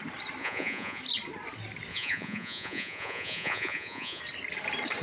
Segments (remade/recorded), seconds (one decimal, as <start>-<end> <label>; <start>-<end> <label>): 0.0-0.4 recorded; 0.4-1.0 remade; 1.0-1.9 recorded; 1.9-4.2 remade; 4.2-5.0 recorded